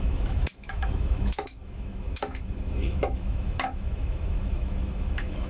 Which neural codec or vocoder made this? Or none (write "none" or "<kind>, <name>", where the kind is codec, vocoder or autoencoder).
autoencoder, DAC-VAE